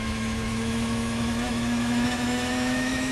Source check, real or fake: fake